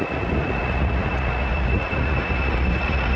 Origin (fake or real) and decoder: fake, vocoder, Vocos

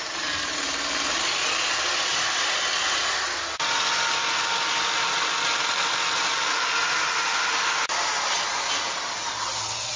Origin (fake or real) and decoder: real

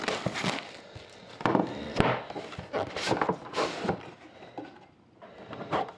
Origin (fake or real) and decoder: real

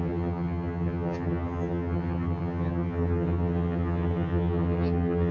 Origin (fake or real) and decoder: fake, vocoder, HiFi-GAN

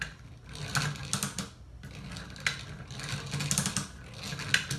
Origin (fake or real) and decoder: real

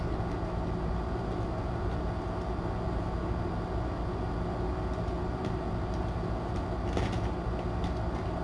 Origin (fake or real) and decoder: real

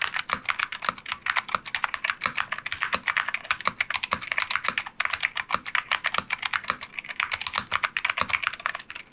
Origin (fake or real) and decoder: real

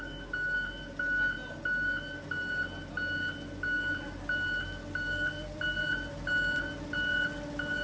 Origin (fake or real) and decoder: real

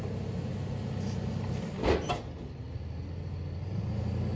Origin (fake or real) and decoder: real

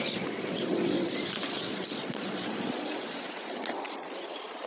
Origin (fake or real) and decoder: fake, vocoder, Vocos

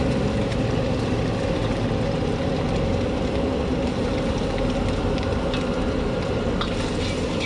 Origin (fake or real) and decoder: real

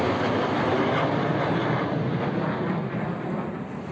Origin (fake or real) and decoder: real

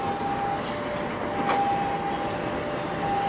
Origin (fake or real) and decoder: real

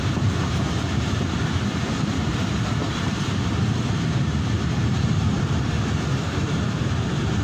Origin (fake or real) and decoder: fake, vocoder, BigVGAN v2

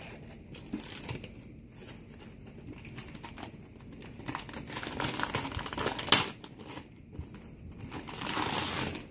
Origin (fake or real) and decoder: real